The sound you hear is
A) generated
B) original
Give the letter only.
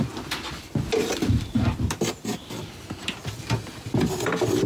A